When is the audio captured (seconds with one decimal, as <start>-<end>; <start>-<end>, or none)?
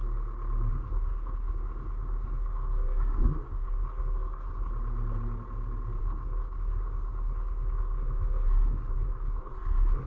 0.0-0.7; 4.7-6.0